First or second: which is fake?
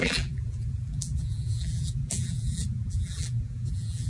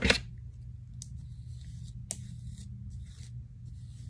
first